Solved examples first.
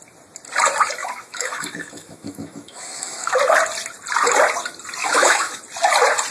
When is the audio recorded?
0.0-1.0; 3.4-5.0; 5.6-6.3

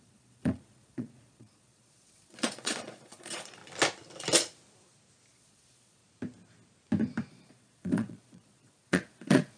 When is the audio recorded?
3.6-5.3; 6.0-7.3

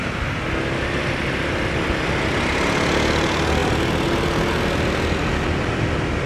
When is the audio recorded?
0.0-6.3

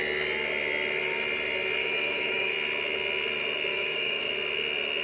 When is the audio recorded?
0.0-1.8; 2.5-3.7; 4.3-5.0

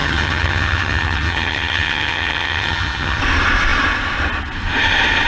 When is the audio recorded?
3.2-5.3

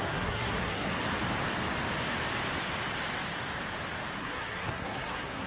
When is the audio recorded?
1.0-4.2

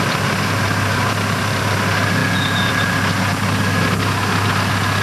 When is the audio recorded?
0.0-2.2; 2.7-5.0

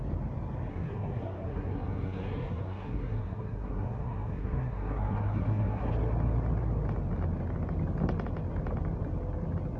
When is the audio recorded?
0.0-0.7; 5.9-9.8